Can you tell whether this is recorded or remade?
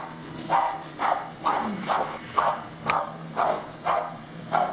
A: remade